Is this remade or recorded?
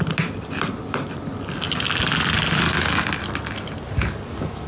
recorded